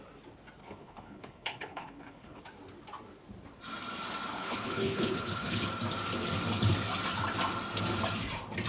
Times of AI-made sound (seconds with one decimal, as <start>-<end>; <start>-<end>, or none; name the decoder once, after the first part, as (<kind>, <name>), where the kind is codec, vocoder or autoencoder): 0.6-2.4 (codec, HILCodec); 4.3-5.7